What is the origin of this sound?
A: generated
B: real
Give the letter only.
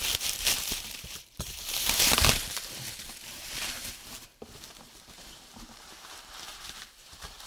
A